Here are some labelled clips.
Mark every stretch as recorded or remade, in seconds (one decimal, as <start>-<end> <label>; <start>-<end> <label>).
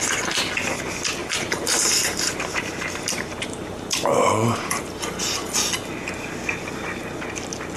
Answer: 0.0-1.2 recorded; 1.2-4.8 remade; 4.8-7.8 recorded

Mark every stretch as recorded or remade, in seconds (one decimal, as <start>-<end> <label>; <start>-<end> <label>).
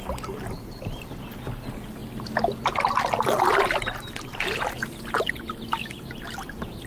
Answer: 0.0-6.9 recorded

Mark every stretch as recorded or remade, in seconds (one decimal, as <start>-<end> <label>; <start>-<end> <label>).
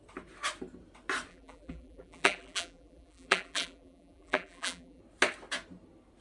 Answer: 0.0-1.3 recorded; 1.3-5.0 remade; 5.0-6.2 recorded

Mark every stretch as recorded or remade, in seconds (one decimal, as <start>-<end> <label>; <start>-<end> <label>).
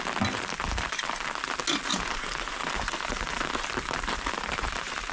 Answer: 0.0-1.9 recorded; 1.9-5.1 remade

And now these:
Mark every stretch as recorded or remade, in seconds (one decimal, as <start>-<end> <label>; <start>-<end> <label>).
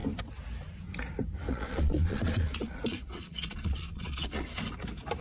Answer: 0.0-1.5 recorded; 1.5-4.6 remade; 4.6-5.2 recorded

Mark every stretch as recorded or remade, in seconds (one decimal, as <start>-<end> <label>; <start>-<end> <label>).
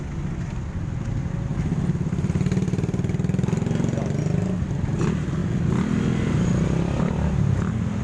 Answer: 0.0-8.0 recorded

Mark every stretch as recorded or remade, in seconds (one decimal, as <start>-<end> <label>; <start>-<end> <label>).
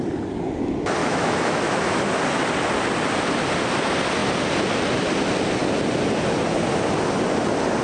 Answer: 0.0-1.0 recorded; 1.0-2.0 remade; 2.0-7.8 recorded